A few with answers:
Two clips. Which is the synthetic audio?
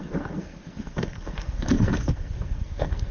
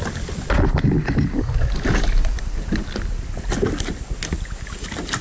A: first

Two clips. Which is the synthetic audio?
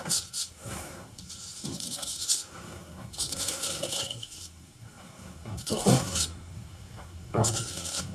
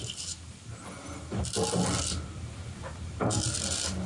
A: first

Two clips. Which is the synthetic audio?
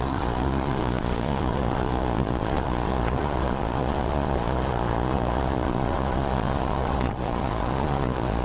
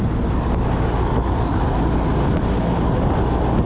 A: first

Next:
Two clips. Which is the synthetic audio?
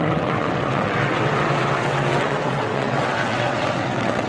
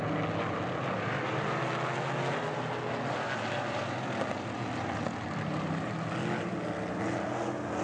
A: first